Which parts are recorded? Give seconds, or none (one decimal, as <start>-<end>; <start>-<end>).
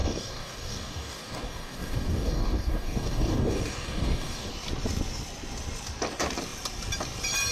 4.5-7.5